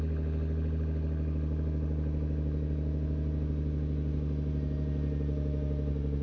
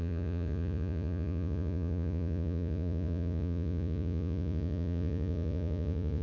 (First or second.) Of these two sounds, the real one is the first